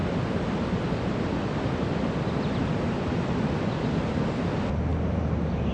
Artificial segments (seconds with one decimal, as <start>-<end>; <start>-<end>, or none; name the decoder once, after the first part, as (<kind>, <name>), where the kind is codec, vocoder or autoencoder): none